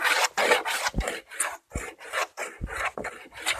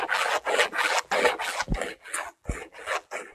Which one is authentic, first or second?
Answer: first